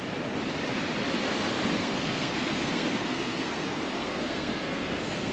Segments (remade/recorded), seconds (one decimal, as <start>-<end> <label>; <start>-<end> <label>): 0.0-1.8 recorded; 1.8-5.3 remade